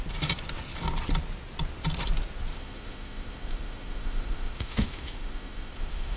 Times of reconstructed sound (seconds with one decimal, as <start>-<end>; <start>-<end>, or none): 2.5-6.2